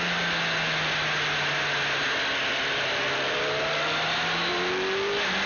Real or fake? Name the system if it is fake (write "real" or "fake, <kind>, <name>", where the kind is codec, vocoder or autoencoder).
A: real